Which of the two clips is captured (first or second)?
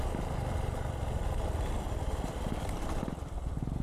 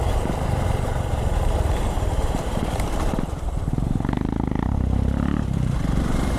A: first